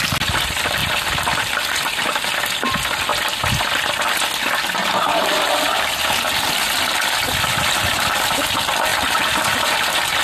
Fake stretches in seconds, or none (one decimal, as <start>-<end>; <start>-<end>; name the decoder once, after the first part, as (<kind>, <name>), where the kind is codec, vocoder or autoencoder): none